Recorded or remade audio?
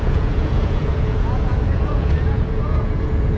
remade